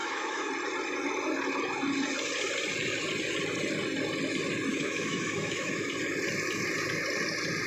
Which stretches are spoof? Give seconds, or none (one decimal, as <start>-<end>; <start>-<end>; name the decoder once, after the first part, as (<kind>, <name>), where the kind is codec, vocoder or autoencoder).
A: 0.0-0.5 (autoencoder, DAC-VAE); 4.7-5.9

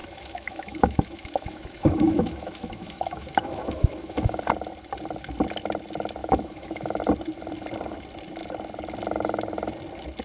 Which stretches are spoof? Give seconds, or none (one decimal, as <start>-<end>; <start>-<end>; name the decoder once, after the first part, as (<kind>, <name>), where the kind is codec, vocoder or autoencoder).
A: 0.0-4.4 (autoencoder, DAC-VAE); 6.2-7.0

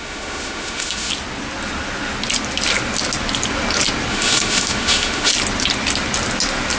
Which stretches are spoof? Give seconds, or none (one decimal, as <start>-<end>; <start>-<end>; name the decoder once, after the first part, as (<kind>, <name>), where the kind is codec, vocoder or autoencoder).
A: 0.0-1.1 (autoencoder, DAC-VAE); 4.1-5.3

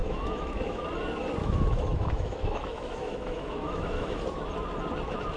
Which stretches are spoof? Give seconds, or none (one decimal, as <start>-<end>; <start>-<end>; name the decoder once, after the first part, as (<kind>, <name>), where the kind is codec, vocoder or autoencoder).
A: 0.0-0.8 (autoencoder, DAC-VAE); 1.4-4.2

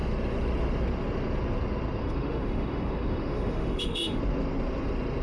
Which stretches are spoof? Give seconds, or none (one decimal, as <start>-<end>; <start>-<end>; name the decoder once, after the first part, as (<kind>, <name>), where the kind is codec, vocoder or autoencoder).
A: 2.0-4.2 (autoencoder, DAC-VAE)

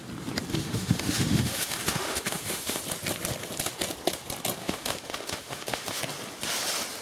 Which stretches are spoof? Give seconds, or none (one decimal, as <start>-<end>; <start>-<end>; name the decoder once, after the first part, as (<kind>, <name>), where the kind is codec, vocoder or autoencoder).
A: 0.5-2.8 (autoencoder, DAC-VAE); 4.6-6.0

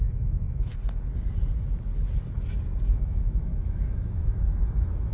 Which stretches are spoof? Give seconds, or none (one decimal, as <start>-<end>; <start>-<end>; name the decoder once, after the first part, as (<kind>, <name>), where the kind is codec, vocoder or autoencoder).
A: 0.0-0.7 (autoencoder, DAC-VAE); 2.8-5.1

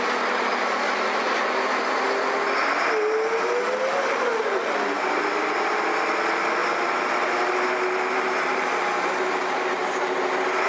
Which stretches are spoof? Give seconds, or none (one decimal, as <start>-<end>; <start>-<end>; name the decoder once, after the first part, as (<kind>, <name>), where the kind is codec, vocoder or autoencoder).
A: none